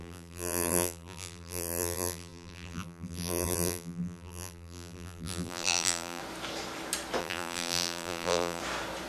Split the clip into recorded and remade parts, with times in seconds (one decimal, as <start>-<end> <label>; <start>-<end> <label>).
0.0-6.2 remade; 6.2-7.2 recorded; 7.2-8.6 remade; 8.6-9.1 recorded